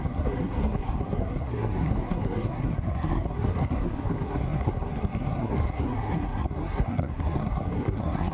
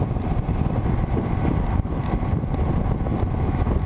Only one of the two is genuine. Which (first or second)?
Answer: second